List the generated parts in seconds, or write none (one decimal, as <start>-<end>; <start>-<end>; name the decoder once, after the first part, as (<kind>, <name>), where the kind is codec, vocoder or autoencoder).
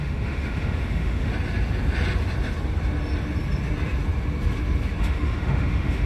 0.0-1.3 (autoencoder, DAC-VAE); 5.0-6.1